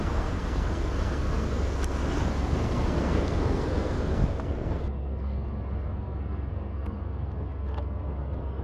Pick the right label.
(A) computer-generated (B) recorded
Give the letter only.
A